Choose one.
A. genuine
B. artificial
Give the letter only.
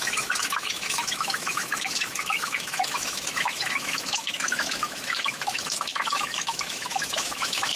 B